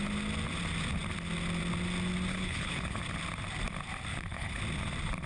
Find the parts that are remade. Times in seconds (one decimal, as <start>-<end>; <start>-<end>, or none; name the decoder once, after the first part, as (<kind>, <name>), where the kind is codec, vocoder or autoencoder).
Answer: 2.3-3.0 (codec, HILCodec); 4.1-4.6